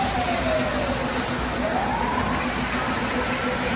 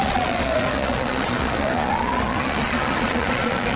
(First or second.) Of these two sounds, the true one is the first